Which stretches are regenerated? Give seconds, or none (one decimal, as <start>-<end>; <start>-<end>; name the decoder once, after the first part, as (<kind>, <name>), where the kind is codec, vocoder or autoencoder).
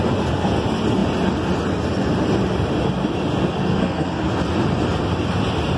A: 3.7-4.3 (codec, SNAC)